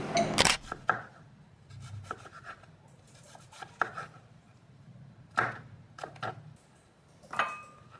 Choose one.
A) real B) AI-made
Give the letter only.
A